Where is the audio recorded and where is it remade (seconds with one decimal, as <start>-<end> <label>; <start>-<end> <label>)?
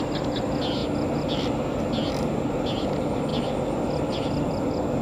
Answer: 0.0-5.0 recorded